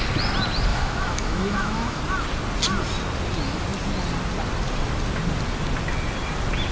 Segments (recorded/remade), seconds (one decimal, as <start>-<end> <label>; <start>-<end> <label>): 0.0-0.7 recorded; 0.7-2.0 remade; 2.0-6.7 recorded